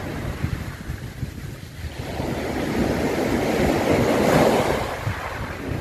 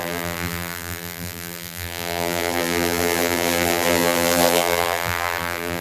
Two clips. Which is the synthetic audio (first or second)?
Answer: second